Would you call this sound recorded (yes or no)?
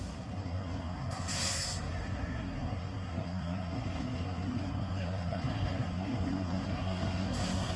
no